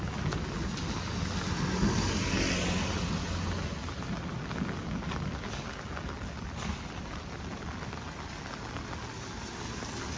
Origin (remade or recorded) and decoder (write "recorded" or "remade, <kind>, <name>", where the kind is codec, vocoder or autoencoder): recorded